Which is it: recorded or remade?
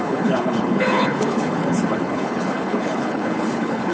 remade